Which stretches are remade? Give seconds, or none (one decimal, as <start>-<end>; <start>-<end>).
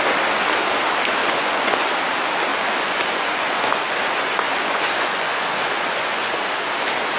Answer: 1.2-1.9; 2.5-6.6